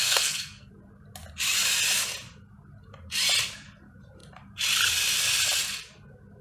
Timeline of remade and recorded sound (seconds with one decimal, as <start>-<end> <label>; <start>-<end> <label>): 0.0-0.7 remade; 0.7-6.4 recorded